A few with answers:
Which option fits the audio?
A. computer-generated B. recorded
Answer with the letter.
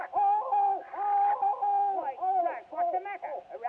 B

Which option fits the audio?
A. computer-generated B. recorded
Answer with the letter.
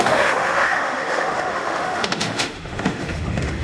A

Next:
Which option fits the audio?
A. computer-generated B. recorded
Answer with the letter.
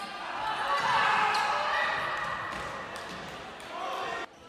B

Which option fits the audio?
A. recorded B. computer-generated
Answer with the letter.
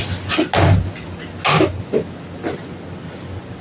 A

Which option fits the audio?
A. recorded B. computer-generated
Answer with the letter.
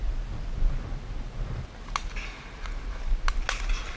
A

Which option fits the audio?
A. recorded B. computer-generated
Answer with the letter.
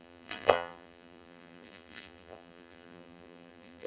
B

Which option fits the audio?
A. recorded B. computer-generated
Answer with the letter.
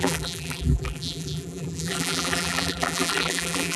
B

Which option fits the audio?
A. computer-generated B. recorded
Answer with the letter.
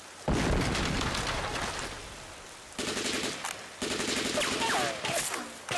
B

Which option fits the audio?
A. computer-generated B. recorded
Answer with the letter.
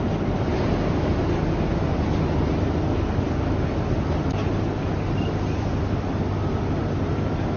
B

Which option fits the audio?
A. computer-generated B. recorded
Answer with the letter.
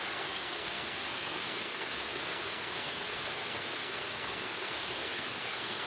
A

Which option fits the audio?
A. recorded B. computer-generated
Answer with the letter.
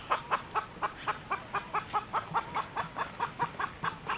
A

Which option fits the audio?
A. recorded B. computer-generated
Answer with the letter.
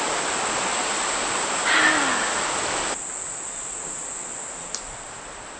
A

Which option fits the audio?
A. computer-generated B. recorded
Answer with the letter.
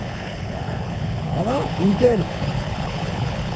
A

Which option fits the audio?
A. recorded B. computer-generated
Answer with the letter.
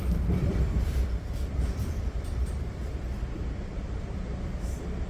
B